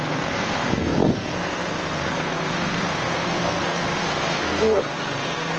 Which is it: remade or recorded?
remade